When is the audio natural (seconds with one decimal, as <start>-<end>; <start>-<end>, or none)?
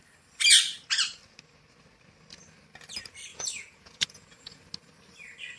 0.0-3.3; 4.6-5.6